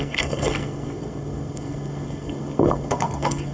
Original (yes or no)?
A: no